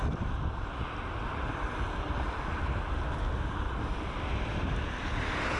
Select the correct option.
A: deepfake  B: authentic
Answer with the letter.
B